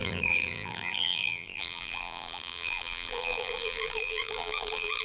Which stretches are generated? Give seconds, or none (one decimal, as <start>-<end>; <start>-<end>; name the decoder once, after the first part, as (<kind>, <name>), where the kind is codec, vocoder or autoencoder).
0.0-5.0 (vocoder, BigVGAN v2)